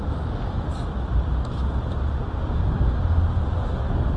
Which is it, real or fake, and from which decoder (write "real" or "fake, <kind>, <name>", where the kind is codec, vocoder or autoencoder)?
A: real